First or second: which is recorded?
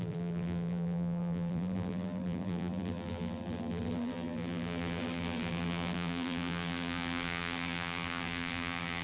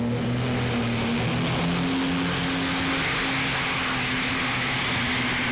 second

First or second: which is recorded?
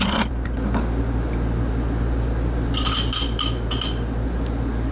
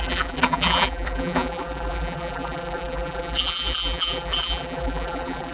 first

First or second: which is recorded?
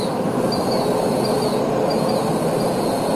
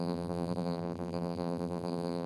first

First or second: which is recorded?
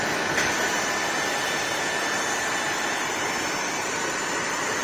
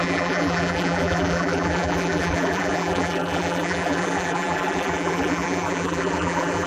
first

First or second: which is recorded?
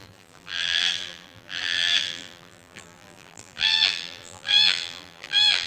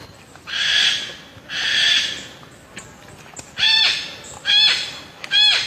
second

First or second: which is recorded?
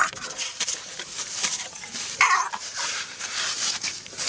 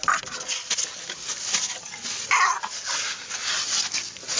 second